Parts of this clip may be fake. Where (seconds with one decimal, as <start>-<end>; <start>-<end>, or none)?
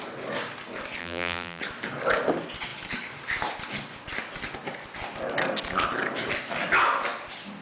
1.0-1.6